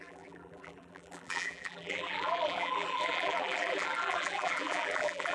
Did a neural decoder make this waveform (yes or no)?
yes